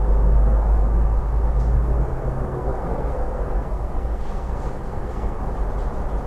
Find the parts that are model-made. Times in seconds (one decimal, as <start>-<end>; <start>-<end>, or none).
0.0-5.4